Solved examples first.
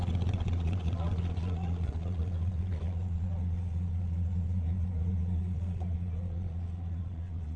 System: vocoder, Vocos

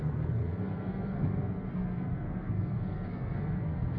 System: codec, SNAC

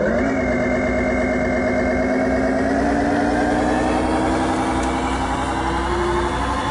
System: none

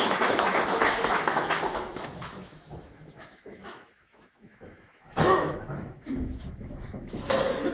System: autoencoder, DAC-VAE